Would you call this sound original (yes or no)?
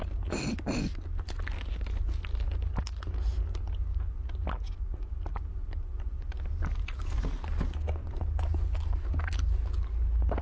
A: yes